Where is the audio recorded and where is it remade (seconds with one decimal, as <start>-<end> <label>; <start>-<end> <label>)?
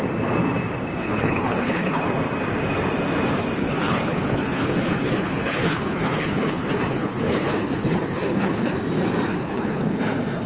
0.0-1.0 recorded; 1.0-2.0 remade; 2.0-3.6 recorded; 3.6-8.7 remade; 8.7-9.3 recorded; 9.3-10.0 remade; 10.0-10.5 recorded